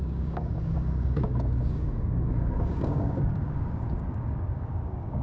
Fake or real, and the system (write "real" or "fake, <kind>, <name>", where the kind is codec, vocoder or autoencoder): fake, codec, DAC